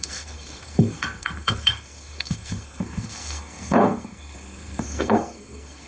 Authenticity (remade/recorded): remade